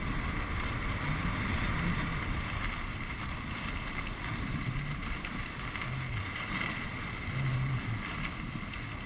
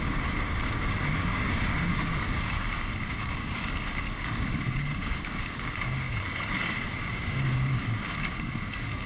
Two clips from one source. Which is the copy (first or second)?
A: second